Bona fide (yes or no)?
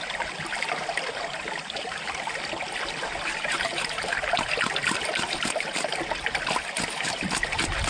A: yes